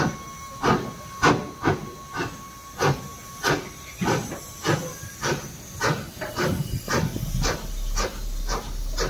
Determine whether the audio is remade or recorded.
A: recorded